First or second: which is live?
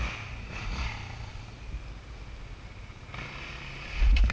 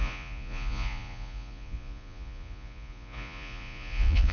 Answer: first